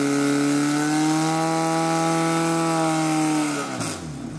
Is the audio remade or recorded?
recorded